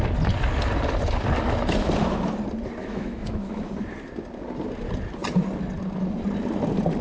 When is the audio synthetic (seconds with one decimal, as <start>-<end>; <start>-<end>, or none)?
2.8-3.7